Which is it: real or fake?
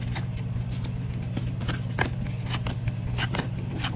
real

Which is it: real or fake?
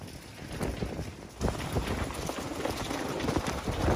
real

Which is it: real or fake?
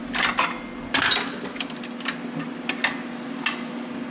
real